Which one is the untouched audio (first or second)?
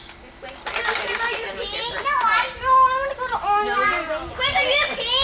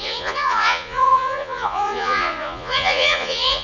first